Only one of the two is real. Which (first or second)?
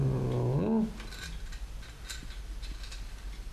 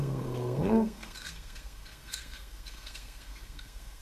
first